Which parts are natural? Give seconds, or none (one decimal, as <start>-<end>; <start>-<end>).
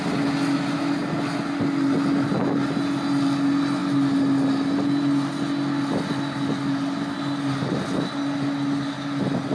0.0-9.5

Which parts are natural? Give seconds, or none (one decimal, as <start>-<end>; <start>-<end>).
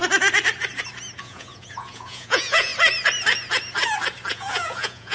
0.0-1.2; 2.7-4.3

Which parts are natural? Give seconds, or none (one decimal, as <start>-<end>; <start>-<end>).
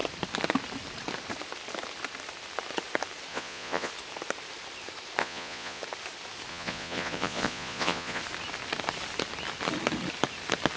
0.0-3.3; 3.9-5.2; 5.8-6.5; 8.2-10.8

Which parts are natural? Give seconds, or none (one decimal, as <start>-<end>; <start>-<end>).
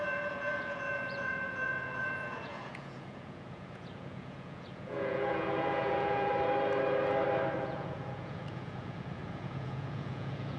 6.3-7.6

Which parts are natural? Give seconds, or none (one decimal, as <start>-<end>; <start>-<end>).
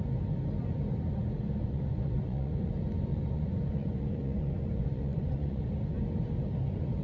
0.0-1.6; 2.7-3.1; 5.6-7.0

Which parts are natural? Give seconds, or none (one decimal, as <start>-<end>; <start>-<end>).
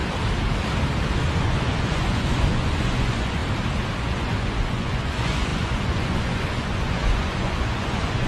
0.0-1.4; 3.4-4.0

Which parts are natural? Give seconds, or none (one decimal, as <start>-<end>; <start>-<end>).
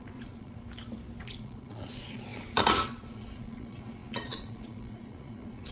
0.6-1.2